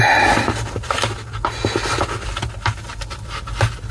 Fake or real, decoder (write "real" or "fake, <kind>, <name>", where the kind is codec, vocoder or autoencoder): real